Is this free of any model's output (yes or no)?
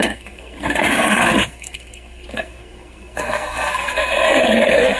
no